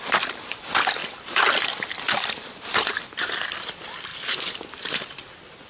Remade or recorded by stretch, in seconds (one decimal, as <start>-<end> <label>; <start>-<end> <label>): 0.0-5.7 remade